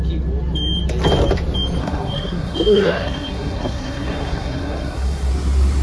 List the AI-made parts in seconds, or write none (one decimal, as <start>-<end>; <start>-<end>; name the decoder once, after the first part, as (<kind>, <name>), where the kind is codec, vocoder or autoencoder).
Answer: 1.8-5.3 (codec, SNAC)